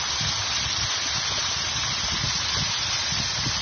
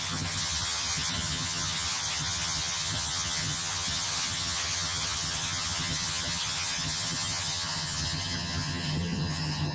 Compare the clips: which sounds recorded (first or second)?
first